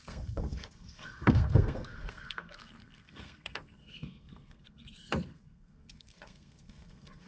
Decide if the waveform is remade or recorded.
remade